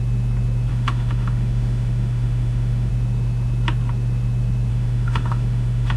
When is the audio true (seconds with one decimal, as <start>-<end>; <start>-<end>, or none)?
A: 0.0-0.7; 2.9-4.7